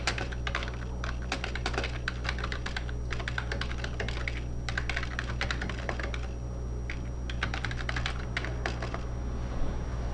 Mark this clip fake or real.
real